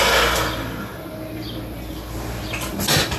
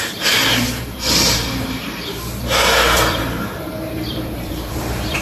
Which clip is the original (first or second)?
first